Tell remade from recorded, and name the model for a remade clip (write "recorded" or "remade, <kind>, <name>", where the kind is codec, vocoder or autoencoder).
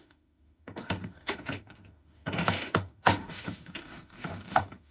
remade, autoencoder, DAC-VAE